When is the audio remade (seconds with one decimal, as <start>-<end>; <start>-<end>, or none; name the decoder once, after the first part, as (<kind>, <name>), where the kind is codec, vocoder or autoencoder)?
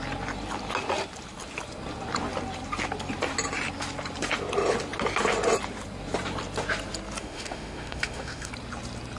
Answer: 7.2-8.5 (autoencoder, DAC-VAE)